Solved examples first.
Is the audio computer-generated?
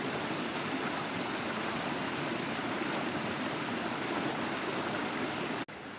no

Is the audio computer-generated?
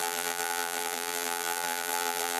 yes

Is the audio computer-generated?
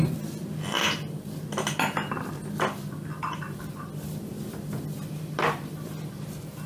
no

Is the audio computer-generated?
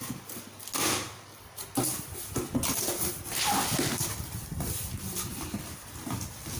no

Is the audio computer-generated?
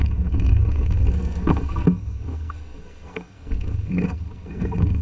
yes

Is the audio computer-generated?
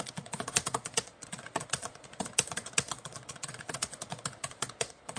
yes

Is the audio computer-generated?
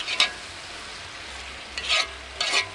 no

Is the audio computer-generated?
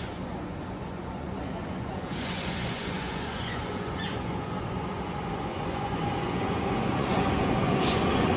yes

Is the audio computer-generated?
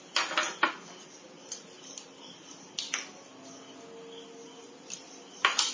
no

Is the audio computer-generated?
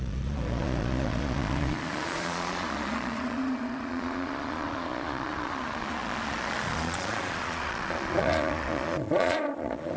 yes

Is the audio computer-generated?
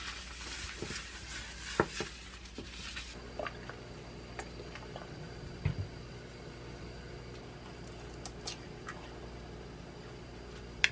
no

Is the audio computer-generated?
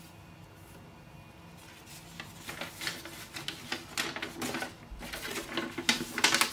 no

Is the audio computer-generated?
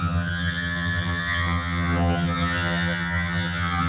yes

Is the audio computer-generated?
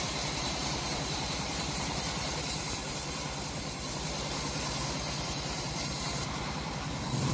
yes